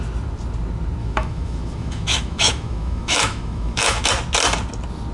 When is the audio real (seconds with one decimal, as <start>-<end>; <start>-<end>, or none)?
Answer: 0.0-1.0; 4.1-5.1